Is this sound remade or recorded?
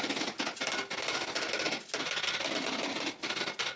recorded